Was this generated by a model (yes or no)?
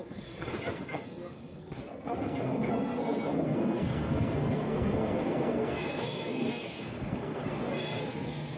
yes